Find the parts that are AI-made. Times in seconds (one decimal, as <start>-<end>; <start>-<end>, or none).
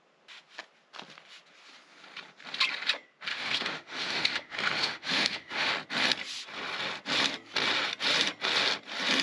3.3-5.7